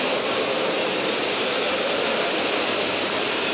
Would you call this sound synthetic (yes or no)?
no